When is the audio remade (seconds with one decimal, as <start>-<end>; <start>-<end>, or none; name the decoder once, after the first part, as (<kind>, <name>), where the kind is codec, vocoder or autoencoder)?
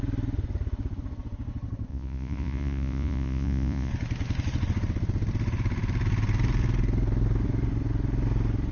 1.9-3.9 (vocoder, Vocos)